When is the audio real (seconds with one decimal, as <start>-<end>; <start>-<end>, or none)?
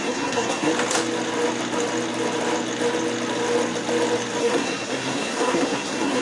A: 0.7-4.4